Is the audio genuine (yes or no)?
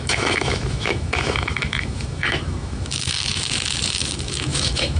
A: no